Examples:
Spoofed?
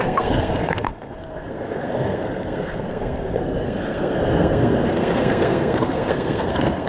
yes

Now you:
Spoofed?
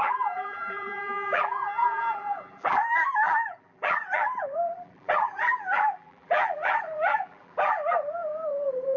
yes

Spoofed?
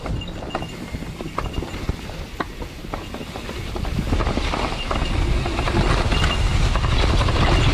no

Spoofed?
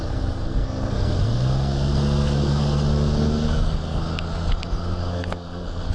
yes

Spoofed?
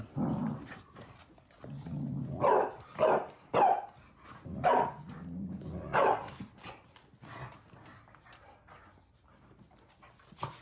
no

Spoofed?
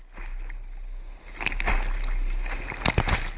no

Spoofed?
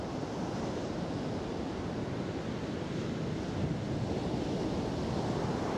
no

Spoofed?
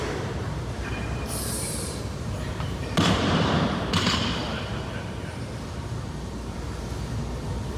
yes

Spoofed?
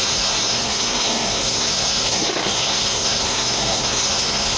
yes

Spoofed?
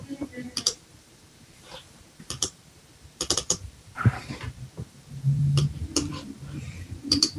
yes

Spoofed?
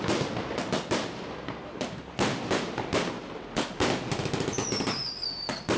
no